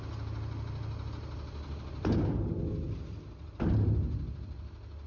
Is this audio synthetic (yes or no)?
no